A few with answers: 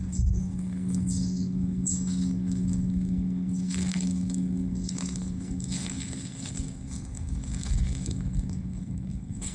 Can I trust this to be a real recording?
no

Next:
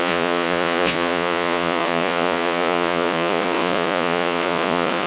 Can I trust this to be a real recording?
no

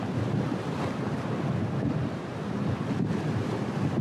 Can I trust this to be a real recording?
yes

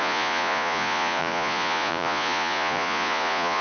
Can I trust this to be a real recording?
no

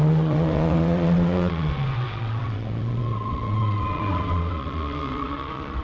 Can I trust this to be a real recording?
no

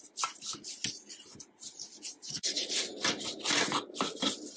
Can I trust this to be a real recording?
no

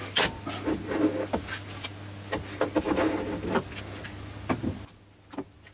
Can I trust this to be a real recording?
yes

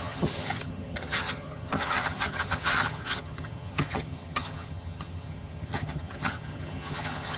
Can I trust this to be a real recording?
no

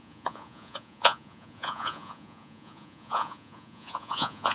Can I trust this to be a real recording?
no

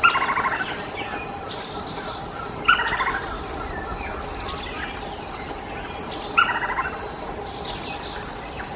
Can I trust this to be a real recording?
yes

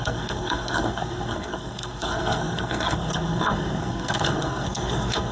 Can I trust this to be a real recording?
no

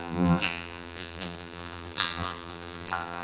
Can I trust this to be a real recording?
no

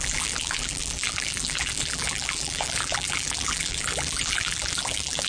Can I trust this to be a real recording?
no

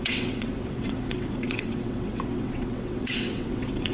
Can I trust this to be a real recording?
no